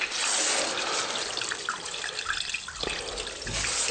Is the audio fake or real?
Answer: real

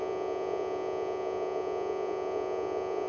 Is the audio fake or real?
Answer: fake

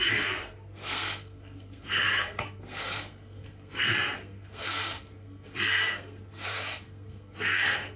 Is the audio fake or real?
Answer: fake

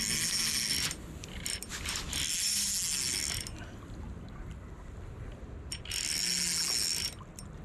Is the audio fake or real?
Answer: real